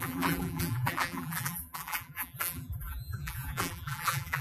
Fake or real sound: fake